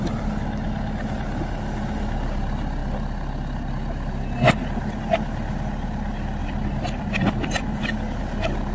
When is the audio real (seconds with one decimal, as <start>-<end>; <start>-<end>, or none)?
0.0-6.4; 8.2-8.7